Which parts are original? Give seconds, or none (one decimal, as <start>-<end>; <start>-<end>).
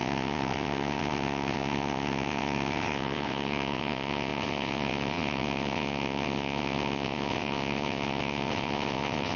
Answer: none